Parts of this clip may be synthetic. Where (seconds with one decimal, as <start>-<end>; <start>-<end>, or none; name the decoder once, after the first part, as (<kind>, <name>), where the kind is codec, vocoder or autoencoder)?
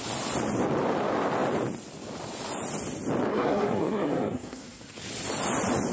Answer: 3.3-4.8 (codec, SNAC)